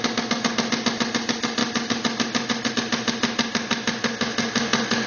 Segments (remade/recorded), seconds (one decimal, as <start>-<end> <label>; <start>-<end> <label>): 0.0-5.1 recorded